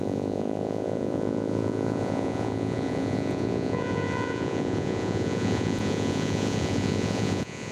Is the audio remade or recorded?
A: remade